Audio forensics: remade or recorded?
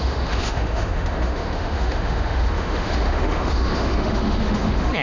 remade